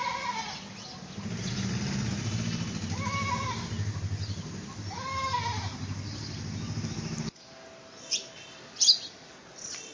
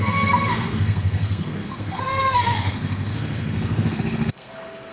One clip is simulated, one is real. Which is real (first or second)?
first